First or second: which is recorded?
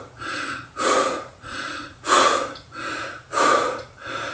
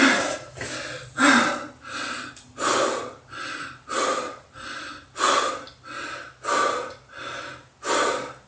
second